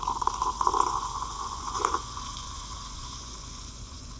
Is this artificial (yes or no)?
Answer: yes